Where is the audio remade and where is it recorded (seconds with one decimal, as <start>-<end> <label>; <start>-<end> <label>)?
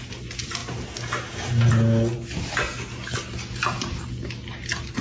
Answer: 0.0-5.0 recorded